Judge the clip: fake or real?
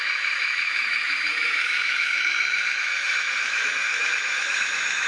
fake